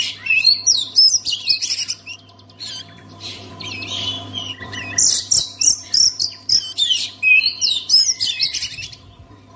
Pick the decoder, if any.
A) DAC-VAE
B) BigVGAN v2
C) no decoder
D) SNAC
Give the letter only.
B